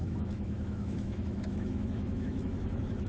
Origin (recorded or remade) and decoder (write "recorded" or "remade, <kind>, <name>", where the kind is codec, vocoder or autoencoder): remade, autoencoder, DAC-VAE